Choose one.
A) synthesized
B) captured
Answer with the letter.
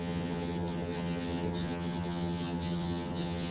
A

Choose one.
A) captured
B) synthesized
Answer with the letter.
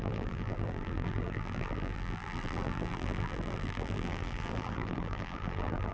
B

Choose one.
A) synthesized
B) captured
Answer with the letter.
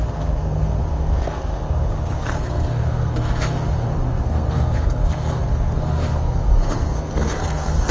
A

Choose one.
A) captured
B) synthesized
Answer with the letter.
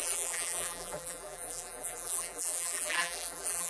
B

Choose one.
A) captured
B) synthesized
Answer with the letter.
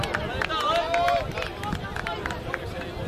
A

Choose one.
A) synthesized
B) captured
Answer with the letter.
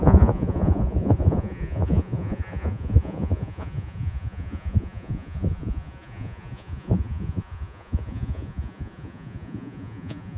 A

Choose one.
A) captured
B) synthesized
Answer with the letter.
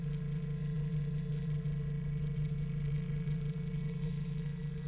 B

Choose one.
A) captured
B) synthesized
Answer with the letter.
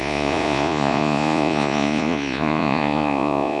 B